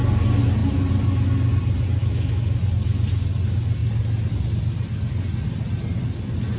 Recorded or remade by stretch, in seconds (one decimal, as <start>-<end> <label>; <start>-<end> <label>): 0.0-2.0 recorded; 2.0-2.6 remade; 2.6-6.6 recorded